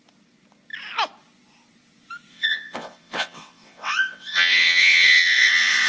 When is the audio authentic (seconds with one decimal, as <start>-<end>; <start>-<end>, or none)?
0.0-2.3